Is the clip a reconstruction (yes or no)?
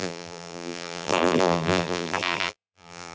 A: yes